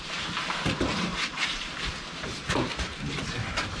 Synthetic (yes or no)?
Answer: yes